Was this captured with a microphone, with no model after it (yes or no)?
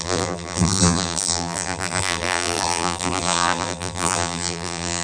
no